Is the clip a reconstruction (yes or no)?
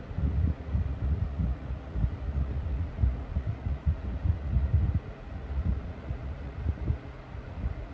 yes